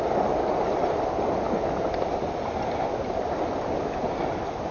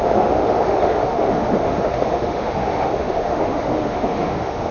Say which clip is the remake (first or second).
second